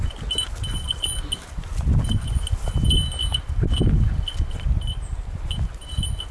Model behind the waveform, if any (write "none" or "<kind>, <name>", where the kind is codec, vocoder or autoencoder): none